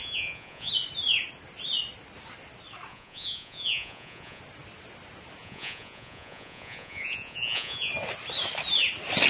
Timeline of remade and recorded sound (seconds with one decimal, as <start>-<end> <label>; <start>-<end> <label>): 0.0-0.7 remade; 0.7-2.9 recorded; 2.9-4.4 remade; 4.4-5.4 recorded; 5.4-7.9 remade; 7.9-9.3 recorded